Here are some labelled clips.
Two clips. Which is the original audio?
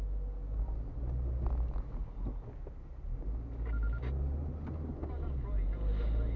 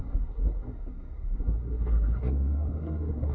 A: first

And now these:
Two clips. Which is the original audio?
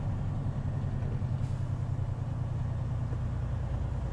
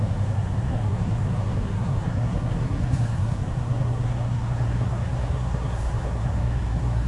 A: first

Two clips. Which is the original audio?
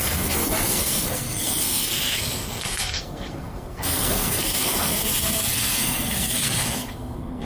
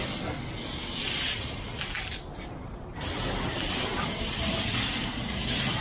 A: second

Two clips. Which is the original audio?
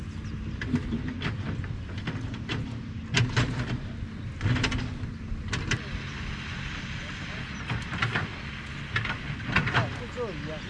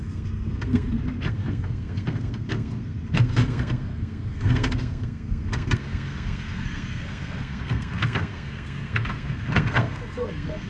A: first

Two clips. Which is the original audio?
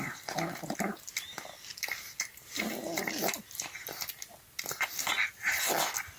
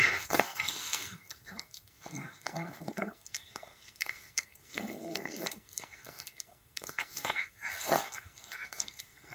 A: first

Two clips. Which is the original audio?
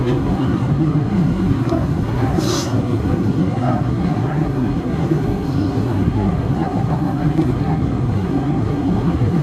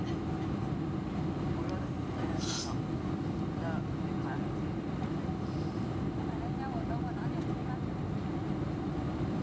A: second